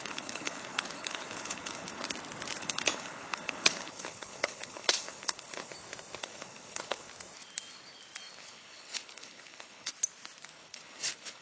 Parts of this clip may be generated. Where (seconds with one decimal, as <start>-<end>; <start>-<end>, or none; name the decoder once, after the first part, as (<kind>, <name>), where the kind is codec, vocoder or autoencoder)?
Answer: 0.0-2.0 (codec, HILCodec); 2.6-5.7; 6.2-7.1; 8.4-9.9; 10.5-11.4